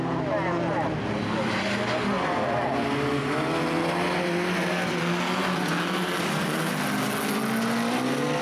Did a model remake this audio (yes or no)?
no